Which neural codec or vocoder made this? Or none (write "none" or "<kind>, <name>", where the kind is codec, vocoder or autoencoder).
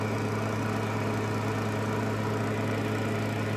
none